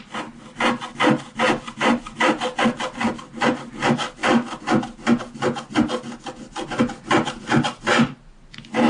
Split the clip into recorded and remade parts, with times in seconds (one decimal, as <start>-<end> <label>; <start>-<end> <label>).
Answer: 0.0-8.9 recorded